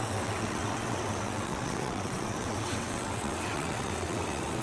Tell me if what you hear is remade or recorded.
remade